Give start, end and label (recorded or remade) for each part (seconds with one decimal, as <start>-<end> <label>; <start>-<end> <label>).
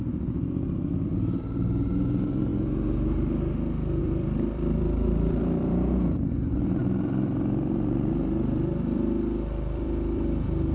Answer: 0.0-2.5 remade; 2.5-4.0 recorded; 4.0-10.7 remade